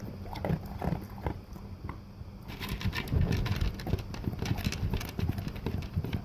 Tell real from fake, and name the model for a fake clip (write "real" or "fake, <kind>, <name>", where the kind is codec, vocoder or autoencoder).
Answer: real